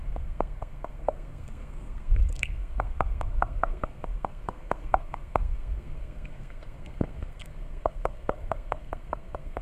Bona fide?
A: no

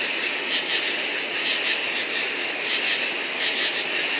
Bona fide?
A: yes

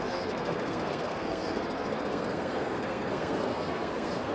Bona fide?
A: no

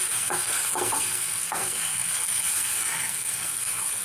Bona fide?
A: no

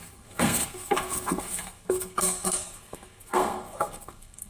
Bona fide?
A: no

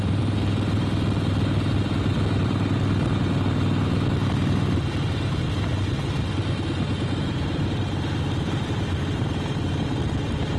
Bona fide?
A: yes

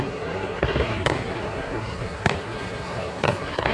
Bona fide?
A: no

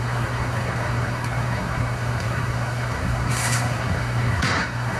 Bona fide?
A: no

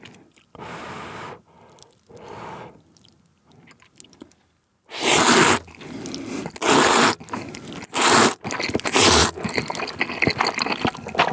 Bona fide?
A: yes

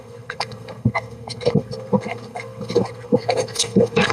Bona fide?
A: no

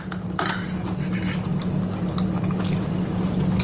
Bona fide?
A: yes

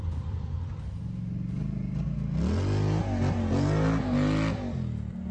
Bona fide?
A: yes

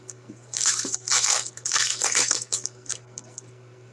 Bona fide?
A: no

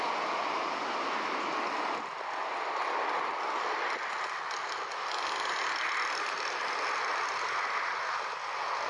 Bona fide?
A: yes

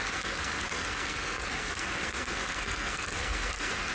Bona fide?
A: no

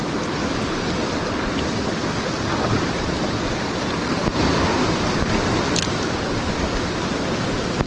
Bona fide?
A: yes